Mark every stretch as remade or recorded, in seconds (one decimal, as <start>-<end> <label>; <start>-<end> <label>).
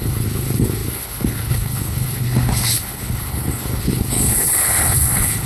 0.0-5.5 remade